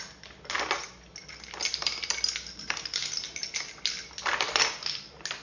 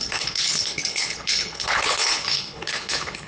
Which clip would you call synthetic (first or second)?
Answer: second